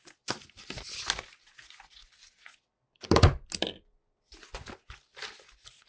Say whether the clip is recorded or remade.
recorded